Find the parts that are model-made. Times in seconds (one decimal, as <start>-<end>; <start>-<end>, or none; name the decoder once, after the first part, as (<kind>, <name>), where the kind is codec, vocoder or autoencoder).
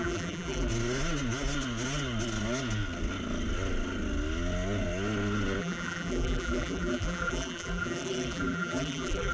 0.0-0.7 (vocoder, BigVGAN v2); 5.6-9.3